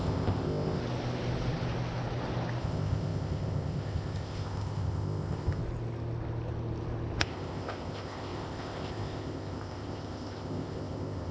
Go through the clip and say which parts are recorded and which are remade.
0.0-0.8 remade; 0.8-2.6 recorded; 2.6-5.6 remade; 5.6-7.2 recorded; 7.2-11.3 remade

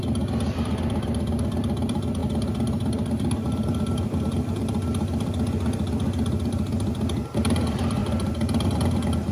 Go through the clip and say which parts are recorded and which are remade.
0.0-9.3 remade